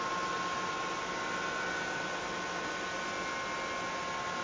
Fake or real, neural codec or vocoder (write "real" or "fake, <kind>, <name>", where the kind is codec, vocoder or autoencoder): real